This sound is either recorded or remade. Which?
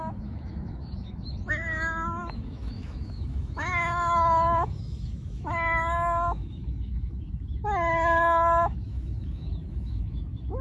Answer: remade